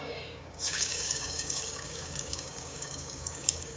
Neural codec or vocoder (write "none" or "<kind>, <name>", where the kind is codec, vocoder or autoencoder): codec, DAC